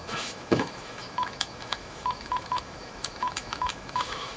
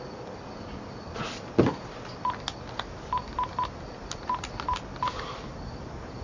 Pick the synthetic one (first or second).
first